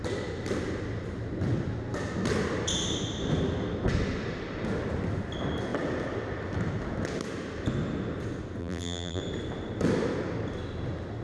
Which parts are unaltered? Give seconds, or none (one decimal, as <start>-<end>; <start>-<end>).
0.0-8.6; 9.2-11.2